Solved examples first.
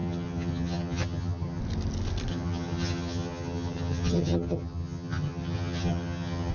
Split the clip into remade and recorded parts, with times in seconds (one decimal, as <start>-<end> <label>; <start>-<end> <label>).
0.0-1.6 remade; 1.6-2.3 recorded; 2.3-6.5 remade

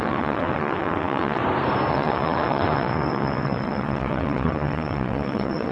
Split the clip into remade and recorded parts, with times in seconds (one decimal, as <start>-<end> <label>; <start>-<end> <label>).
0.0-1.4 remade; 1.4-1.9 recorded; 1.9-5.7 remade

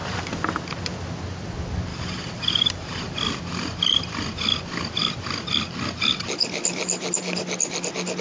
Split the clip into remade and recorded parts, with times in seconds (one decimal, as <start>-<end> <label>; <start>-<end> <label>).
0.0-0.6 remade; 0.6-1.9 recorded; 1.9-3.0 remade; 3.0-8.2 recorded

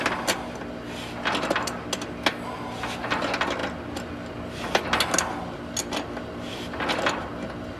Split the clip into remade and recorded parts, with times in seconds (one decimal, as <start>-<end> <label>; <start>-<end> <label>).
0.0-7.8 recorded